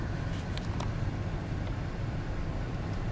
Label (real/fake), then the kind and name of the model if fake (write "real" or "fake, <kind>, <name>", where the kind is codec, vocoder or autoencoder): fake, vocoder, BigVGAN v2